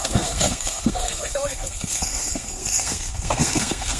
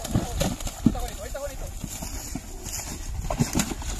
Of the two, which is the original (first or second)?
second